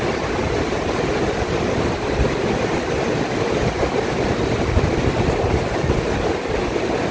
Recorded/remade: recorded